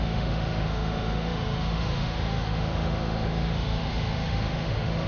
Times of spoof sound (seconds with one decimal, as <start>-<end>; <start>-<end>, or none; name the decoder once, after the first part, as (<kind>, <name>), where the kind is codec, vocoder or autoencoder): 0.0-5.1 (autoencoder, DAC-VAE)